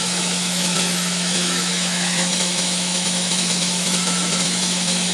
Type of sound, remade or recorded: remade